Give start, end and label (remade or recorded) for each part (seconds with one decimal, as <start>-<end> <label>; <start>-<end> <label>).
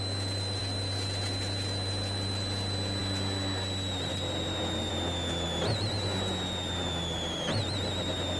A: 0.0-8.4 recorded